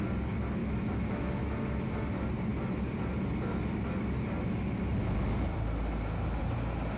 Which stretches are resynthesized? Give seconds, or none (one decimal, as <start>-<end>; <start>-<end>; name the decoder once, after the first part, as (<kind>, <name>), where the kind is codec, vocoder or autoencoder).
0.6-1.5 (autoencoder, DAC-VAE)